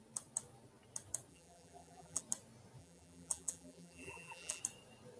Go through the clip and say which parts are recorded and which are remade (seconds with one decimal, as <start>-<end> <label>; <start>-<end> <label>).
0.0-1.3 recorded; 1.3-2.2 remade; 2.2-2.8 recorded; 2.8-4.6 remade; 4.6-5.2 recorded

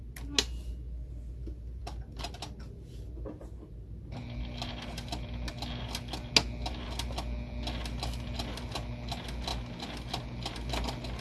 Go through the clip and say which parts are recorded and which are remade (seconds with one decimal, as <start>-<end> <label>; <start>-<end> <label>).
0.0-11.2 recorded

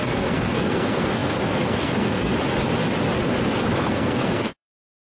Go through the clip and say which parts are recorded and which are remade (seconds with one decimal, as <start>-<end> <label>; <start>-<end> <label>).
0.0-2.3 remade; 2.3-3.9 recorded; 3.9-5.2 remade

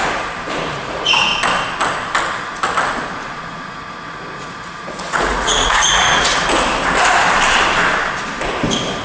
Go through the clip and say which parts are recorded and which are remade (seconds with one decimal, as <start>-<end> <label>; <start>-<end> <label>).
0.0-0.7 recorded; 0.7-1.3 remade; 1.3-3.3 recorded; 3.3-6.3 remade; 6.3-9.0 recorded

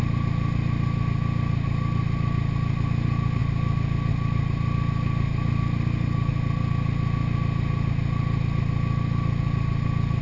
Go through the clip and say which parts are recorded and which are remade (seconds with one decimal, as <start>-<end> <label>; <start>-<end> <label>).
0.0-10.2 recorded

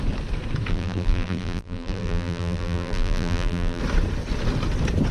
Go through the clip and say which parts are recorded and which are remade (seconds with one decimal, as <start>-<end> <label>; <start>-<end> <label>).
0.0-0.7 recorded; 0.7-3.8 remade; 3.8-5.1 recorded